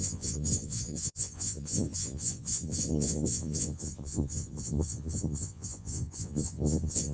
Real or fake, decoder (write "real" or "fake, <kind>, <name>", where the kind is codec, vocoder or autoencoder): fake, vocoder, Vocos